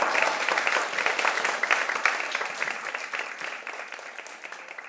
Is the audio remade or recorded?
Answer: recorded